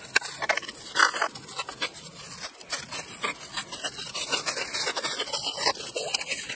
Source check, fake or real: fake